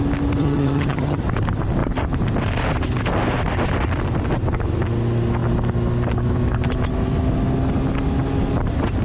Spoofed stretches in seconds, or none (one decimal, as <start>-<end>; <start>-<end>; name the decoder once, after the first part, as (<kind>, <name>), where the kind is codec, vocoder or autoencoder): 0.4-1.2 (vocoder, HiFi-GAN)